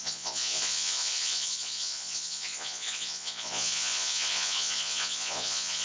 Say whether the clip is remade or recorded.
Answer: remade